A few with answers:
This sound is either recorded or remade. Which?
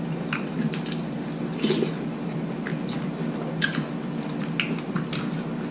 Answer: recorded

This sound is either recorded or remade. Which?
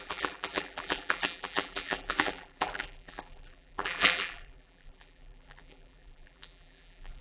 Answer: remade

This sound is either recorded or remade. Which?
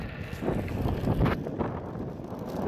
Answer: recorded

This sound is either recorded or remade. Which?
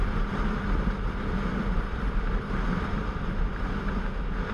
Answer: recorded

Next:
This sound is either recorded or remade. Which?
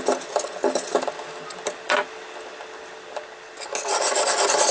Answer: recorded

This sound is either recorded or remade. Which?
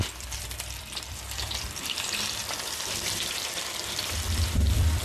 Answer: remade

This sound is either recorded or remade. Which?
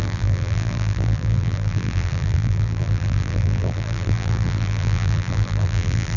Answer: remade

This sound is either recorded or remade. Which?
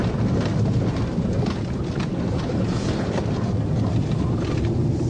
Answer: recorded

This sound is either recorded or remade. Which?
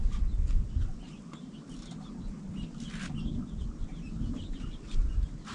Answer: recorded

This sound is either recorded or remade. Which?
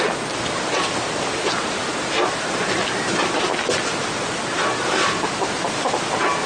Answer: recorded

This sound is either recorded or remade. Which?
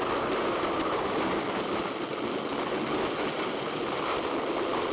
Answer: remade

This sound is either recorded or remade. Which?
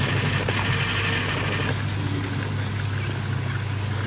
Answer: recorded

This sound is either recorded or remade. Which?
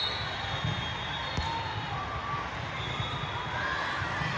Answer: recorded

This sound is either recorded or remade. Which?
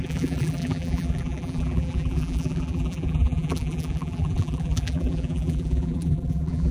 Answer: remade